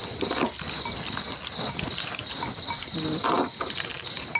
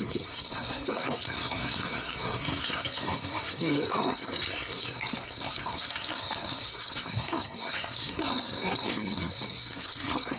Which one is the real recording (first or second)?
first